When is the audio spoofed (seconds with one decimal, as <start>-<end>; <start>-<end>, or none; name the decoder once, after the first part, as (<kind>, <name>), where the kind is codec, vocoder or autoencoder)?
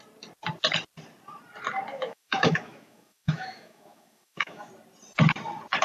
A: 1.9-4.7 (autoencoder, DAC-VAE)